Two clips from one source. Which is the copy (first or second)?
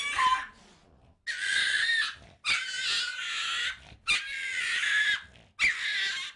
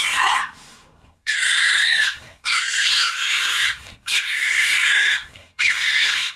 second